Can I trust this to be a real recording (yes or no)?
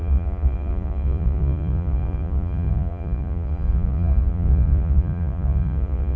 no